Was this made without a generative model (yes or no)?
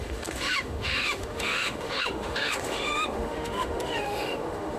no